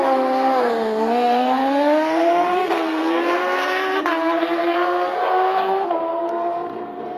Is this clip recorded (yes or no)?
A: no